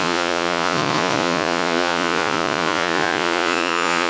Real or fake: fake